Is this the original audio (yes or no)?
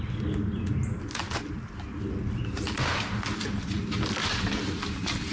yes